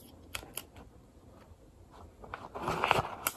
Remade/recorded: recorded